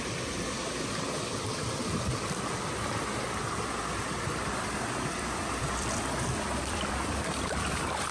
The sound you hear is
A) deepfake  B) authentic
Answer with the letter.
A